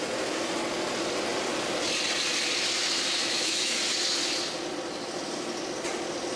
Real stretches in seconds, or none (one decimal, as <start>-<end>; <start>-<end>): 0.0-3.2; 3.8-6.4